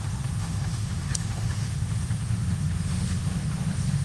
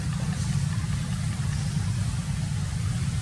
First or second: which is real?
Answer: second